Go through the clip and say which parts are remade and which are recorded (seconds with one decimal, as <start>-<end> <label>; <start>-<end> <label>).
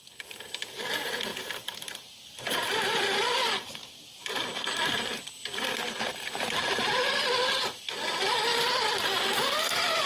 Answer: 0.0-1.3 recorded; 1.3-5.3 remade; 5.3-6.1 recorded; 6.1-6.9 remade; 6.9-10.1 recorded